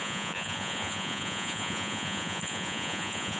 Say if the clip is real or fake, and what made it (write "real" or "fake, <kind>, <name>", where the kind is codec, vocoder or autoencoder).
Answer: fake, vocoder, Vocos